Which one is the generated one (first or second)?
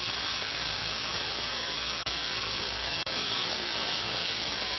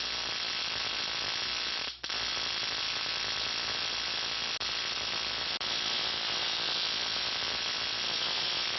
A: first